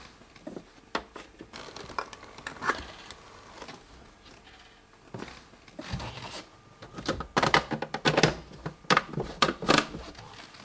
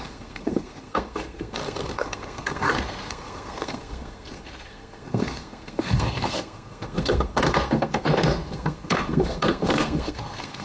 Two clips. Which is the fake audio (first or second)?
second